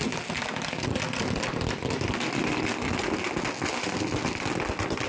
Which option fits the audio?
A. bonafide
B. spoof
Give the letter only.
A